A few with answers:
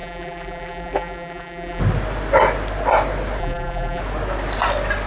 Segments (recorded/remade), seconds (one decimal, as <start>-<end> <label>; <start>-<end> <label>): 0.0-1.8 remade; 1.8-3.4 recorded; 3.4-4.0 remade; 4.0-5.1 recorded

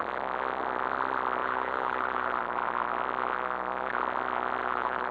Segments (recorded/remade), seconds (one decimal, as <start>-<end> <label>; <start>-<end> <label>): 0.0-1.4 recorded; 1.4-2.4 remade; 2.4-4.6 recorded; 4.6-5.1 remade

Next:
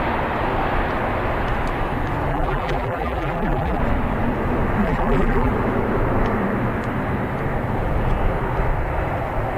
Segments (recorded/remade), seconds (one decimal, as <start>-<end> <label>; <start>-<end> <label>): 0.0-2.3 recorded; 2.3-3.8 remade; 3.8-4.8 recorded; 4.8-5.5 remade; 5.5-9.6 recorded